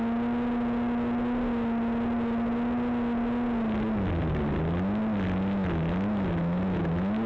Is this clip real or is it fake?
real